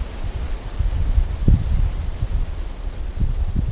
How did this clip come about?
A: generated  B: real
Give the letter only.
A